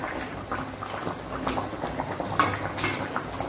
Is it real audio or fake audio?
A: real